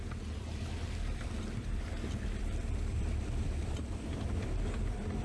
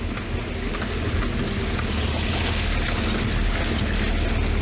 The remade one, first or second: first